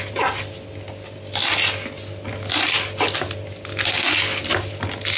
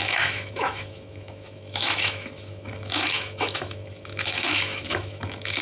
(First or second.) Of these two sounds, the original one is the first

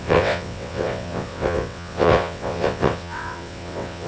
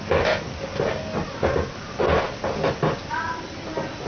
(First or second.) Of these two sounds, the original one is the second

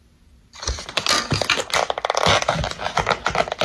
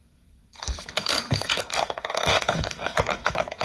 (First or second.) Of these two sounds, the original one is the first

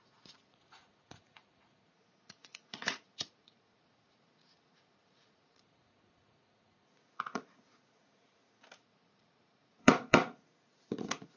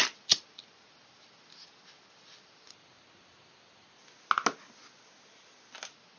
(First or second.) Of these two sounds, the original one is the second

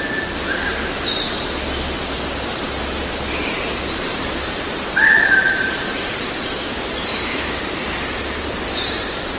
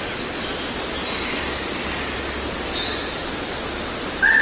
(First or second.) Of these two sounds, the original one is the second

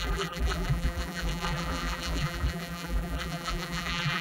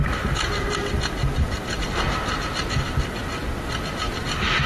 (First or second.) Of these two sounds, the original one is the second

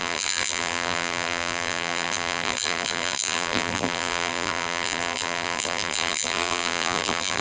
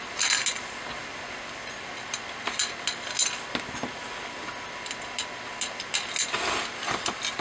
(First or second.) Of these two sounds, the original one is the second